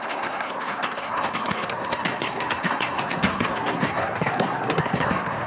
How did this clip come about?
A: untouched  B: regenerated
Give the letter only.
B